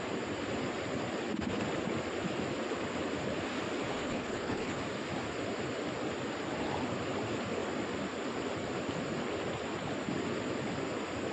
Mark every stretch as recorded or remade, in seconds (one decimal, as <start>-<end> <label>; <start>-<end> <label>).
0.0-3.9 recorded; 3.9-4.8 remade; 4.8-11.3 recorded

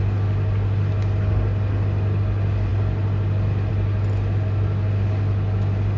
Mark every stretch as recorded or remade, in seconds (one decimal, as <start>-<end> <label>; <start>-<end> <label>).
0.0-6.0 recorded

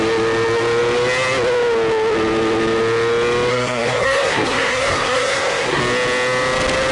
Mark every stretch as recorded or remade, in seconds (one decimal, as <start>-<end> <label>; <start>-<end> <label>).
0.0-3.5 recorded; 3.5-5.8 remade; 5.8-6.9 recorded

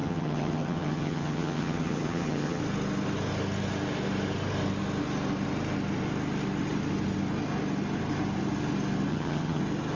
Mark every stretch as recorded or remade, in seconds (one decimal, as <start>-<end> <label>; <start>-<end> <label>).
0.0-2.6 remade; 2.6-9.1 recorded; 9.1-9.6 remade; 9.6-10.0 recorded

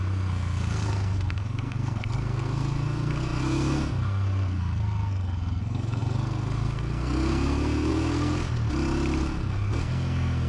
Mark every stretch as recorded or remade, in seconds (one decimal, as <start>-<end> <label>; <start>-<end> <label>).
0.0-8.4 remade; 8.4-9.2 recorded; 9.2-10.5 remade